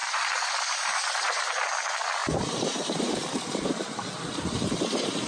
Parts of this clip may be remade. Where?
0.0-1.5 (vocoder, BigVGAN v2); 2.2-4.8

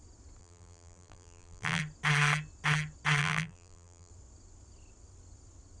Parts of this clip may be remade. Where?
0.4-1.8 (vocoder, BigVGAN v2); 3.2-4.1

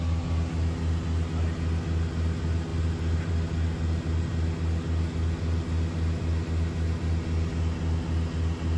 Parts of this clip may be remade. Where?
none

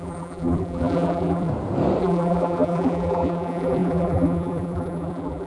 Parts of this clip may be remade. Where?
0.0-1.5 (vocoder, BigVGAN v2); 2.0-5.5